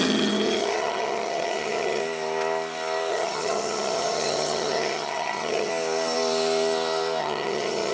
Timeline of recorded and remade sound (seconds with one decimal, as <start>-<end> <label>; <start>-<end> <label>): 0.0-2.0 remade; 2.0-3.1 recorded; 3.1-5.7 remade; 5.7-7.2 recorded; 7.2-7.9 remade